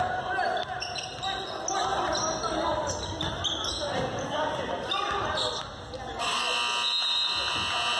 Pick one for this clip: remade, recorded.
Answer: recorded